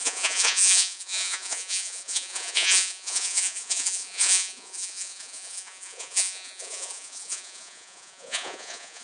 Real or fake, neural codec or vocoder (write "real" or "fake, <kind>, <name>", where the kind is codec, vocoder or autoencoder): fake, vocoder, Vocos